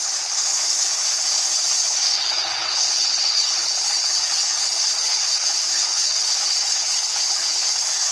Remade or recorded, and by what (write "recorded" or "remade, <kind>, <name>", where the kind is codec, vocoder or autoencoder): remade, codec, HILCodec